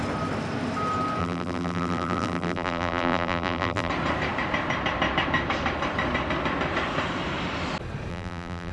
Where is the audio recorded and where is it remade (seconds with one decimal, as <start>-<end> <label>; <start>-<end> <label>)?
0.0-1.2 recorded; 1.2-3.9 remade; 3.9-8.1 recorded; 8.1-8.7 remade

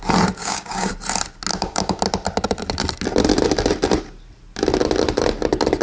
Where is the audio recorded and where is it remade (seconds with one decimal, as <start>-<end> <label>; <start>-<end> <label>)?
0.0-0.4 recorded; 0.4-0.9 remade; 0.9-1.5 recorded; 1.5-2.0 remade; 2.0-5.8 recorded

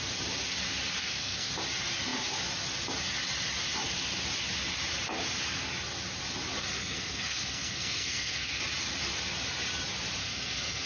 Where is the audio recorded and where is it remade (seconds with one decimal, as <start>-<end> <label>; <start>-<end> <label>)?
0.0-1.0 recorded; 1.0-1.5 remade; 1.5-6.6 recorded; 6.6-8.6 remade; 8.6-10.2 recorded; 10.2-10.9 remade

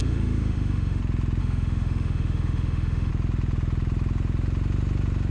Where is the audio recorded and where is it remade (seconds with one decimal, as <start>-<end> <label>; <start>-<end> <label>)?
0.0-1.0 remade; 1.0-1.4 recorded; 1.4-3.1 remade; 3.1-5.3 recorded

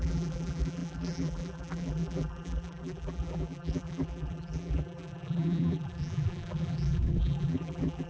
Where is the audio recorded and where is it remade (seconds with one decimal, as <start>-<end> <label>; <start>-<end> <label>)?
0.0-8.1 remade

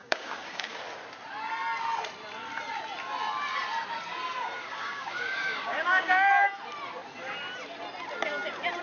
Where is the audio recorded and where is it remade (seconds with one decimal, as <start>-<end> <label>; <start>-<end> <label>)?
0.0-0.8 remade; 0.8-4.6 recorded; 4.6-6.5 remade; 6.5-8.8 recorded

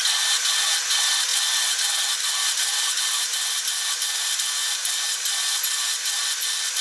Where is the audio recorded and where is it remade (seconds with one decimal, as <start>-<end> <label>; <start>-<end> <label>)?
0.0-6.8 recorded